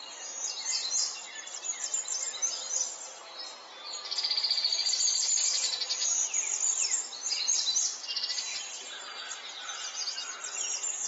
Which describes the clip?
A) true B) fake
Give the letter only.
A